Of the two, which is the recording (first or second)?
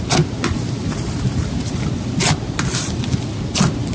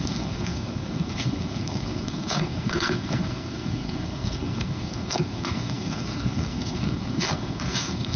first